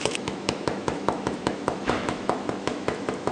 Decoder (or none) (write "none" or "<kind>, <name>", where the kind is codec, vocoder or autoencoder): autoencoder, DAC-VAE